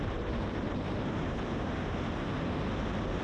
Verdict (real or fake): fake